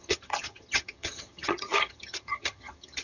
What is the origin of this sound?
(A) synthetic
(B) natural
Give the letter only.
A